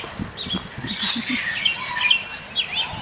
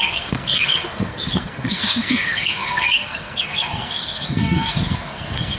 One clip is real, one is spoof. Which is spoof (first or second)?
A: second